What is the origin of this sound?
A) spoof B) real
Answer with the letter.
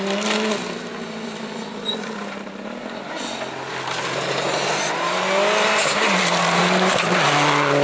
B